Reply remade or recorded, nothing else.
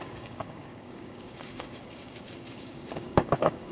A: remade